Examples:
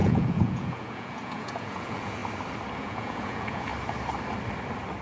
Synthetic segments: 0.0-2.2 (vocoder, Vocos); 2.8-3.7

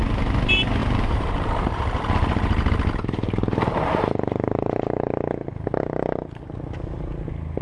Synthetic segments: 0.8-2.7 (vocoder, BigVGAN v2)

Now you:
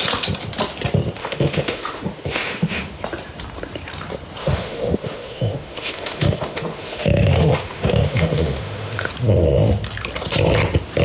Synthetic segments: 1.2-3.0 (autoencoder, DAC-VAE); 4.4-9.1

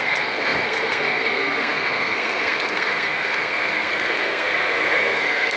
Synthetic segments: 0.0-5.6 (codec, SNAC)